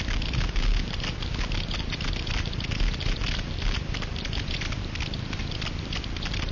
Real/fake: real